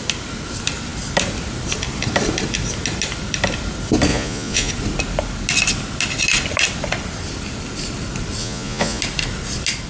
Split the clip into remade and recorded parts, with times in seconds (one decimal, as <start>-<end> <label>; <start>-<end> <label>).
0.0-4.1 recorded; 4.1-4.7 remade; 4.7-8.4 recorded; 8.4-9.0 remade; 9.0-9.9 recorded